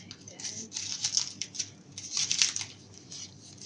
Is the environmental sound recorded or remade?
recorded